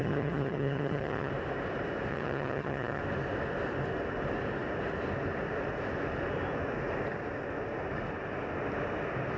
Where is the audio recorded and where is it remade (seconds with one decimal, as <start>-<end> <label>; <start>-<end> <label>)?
0.0-1.3 remade; 1.3-2.1 recorded; 2.1-3.0 remade; 3.0-9.4 recorded